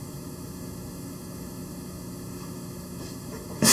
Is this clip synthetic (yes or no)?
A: yes